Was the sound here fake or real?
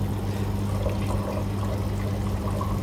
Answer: real